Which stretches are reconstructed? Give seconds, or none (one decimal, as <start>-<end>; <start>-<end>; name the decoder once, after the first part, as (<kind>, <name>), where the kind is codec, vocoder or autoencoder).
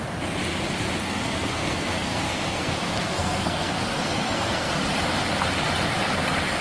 1.0-4.7 (codec, SNAC)